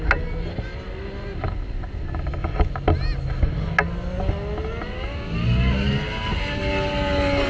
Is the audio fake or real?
real